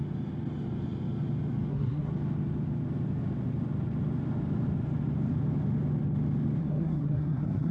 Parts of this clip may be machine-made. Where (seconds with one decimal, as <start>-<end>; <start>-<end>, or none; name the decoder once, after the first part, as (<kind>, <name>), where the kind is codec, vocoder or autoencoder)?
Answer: 1.7-2.1 (codec, SNAC); 6.6-7.7